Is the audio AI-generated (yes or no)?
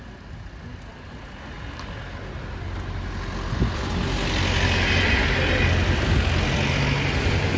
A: no